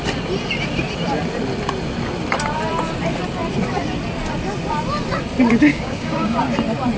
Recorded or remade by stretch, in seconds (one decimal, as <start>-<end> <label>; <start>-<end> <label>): 0.0-5.7 recorded; 5.7-6.4 remade; 6.4-7.0 recorded